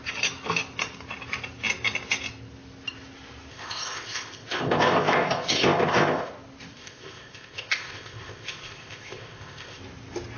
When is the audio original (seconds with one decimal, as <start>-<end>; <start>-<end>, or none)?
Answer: 0.0-3.5; 6.3-6.7; 9.8-10.4

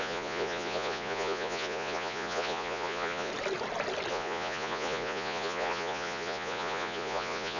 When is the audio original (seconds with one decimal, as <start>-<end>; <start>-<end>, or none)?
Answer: 3.3-4.1

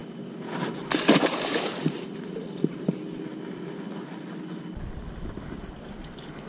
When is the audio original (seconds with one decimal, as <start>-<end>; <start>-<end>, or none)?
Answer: 1.3-1.8; 3.0-6.5

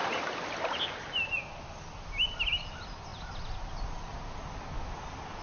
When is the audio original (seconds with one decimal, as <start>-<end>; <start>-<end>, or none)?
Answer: 1.4-5.4

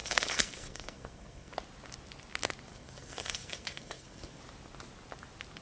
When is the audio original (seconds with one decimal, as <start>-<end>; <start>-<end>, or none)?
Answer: 1.5-2.7; 4.4-5.6

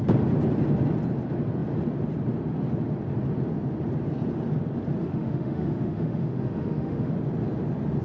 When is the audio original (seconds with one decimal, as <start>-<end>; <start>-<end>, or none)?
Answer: 0.0-5.0; 7.1-8.0

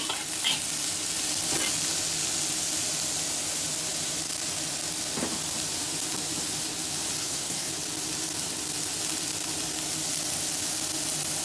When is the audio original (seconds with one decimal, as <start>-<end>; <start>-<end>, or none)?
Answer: 0.0-7.2; 7.7-11.4

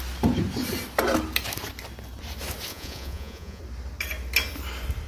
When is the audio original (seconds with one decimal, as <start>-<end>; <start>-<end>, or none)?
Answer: 0.0-2.7; 3.6-5.1